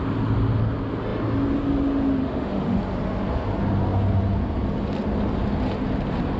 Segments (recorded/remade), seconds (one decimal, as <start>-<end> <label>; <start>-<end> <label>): 0.0-2.2 recorded; 2.2-2.8 remade; 2.8-6.4 recorded